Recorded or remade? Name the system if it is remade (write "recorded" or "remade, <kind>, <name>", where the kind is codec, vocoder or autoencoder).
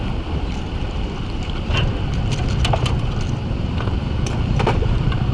remade, vocoder, BigVGAN v2